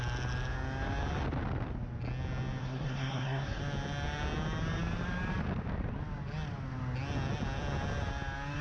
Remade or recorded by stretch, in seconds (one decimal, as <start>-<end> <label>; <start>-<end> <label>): 0.0-2.6 recorded; 2.6-3.6 remade; 3.6-8.6 recorded